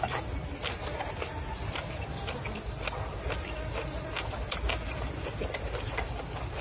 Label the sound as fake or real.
real